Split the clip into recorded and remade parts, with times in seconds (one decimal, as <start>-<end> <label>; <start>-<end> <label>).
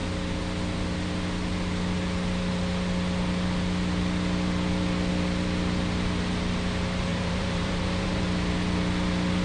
0.0-7.1 recorded; 7.1-8.2 remade; 8.2-9.4 recorded